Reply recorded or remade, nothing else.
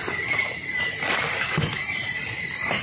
recorded